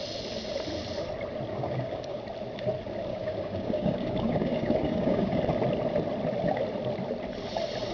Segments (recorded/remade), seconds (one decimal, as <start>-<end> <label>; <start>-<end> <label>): 0.0-1.5 recorded; 1.5-2.2 remade; 2.2-3.1 recorded; 3.1-5.4 remade; 5.4-7.9 recorded